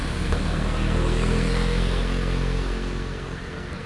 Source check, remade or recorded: remade